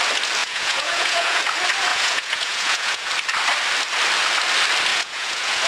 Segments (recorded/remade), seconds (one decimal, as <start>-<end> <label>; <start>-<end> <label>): 0.0-0.4 recorded; 0.4-1.4 remade; 1.4-1.9 recorded; 1.9-3.1 remade; 3.1-4.9 recorded; 4.9-5.7 remade